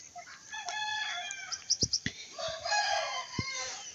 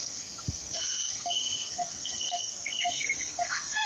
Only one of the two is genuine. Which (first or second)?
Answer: first